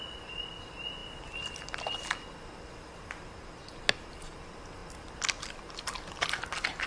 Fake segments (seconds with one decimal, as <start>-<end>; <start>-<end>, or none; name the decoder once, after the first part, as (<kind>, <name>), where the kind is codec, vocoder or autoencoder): none

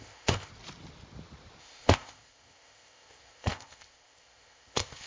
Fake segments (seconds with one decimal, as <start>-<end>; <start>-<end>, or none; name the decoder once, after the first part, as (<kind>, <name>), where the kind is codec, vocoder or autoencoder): 0.0-0.5 (codec, ZipCodec); 1.6-5.1